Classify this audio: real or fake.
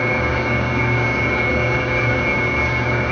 fake